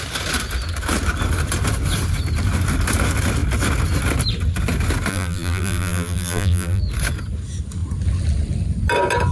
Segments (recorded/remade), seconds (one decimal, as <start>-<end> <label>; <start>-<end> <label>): 0.0-5.1 recorded; 5.1-6.8 remade; 6.8-9.3 recorded